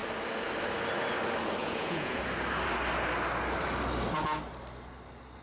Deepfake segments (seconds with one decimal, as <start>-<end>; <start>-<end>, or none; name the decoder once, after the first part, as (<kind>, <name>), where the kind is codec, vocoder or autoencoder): 1.6-2.2 (vocoder, Vocos)